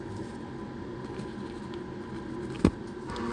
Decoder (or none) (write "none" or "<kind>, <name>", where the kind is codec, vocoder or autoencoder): none